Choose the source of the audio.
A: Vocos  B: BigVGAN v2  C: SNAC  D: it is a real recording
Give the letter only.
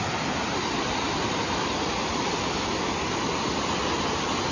D